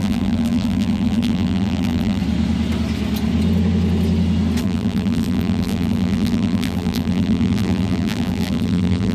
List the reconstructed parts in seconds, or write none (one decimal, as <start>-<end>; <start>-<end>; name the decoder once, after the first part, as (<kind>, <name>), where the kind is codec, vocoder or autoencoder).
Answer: 0.0-2.2 (vocoder, BigVGAN v2); 4.6-9.1